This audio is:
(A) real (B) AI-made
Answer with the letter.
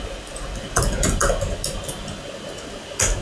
A